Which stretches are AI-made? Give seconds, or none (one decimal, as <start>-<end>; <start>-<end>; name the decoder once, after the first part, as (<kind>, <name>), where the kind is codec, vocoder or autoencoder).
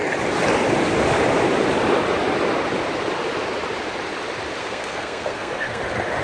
4.6-5.8 (codec, SNAC)